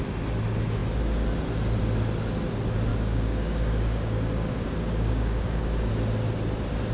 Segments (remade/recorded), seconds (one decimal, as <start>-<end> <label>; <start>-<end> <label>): 0.0-2.9 recorded; 2.9-5.9 remade; 5.9-6.9 recorded